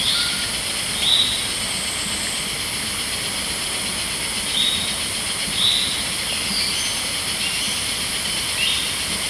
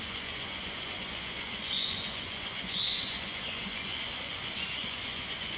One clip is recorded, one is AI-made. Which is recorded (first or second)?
first